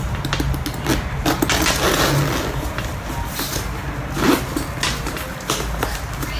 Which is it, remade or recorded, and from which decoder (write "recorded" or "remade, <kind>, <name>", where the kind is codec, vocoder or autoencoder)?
recorded